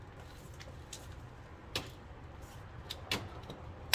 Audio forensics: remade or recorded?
recorded